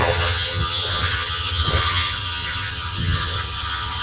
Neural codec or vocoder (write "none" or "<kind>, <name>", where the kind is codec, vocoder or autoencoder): vocoder, HiFi-GAN